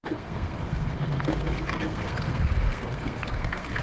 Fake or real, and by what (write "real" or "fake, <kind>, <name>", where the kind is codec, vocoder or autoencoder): fake, codec, SNAC